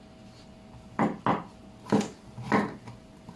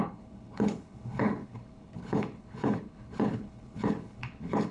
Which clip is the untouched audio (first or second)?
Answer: first